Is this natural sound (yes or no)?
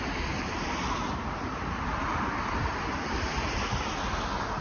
yes